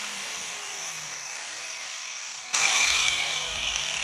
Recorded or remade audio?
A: remade